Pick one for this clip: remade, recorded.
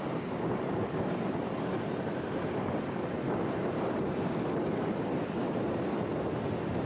recorded